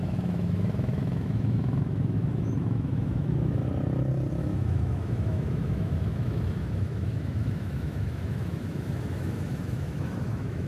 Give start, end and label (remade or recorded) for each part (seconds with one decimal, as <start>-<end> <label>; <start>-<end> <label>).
0.0-3.6 remade; 3.6-4.4 recorded; 4.4-10.7 remade